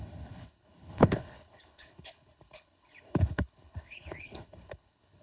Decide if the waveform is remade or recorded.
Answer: remade